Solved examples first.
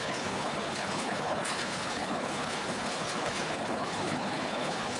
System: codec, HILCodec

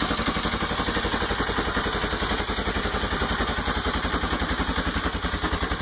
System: none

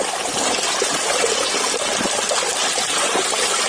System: none